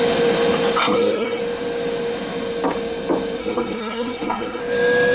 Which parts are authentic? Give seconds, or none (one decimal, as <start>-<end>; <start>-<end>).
0.0-0.8; 1.4-3.4; 4.6-5.1